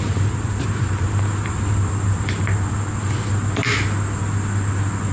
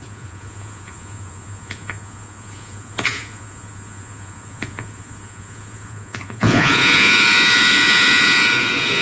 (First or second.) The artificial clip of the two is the second